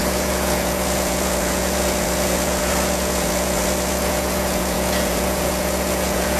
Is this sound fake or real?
fake